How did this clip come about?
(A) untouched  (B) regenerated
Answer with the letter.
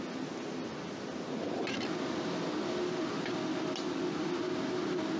A